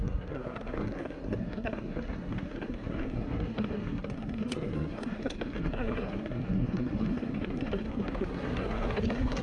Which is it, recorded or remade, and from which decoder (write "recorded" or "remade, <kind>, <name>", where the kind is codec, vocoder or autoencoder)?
remade, codec, SNAC